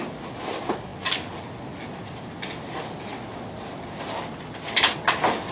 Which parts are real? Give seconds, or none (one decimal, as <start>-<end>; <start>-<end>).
0.0-5.5